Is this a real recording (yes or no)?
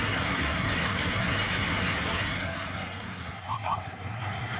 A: no